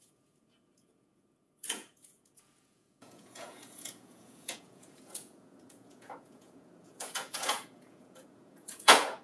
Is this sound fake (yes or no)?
yes